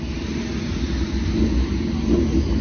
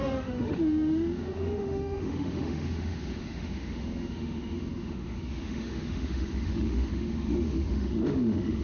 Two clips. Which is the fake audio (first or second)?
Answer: second